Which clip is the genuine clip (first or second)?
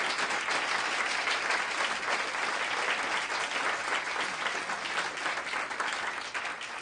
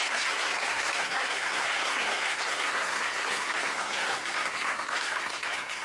first